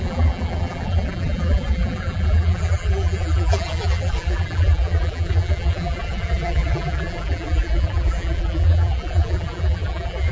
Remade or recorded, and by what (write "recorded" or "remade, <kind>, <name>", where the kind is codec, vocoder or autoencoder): remade, vocoder, BigVGAN v2